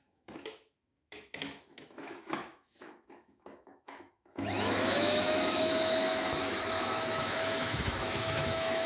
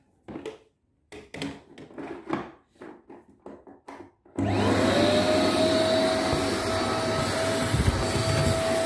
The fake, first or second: first